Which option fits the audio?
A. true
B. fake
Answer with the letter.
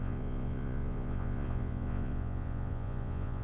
B